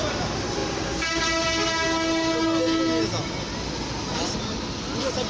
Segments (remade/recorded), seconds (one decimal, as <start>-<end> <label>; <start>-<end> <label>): 0.0-0.6 recorded; 0.6-1.2 remade; 1.2-5.3 recorded